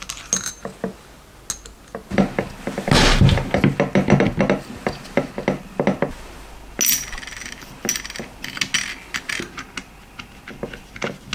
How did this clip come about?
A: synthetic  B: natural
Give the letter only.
B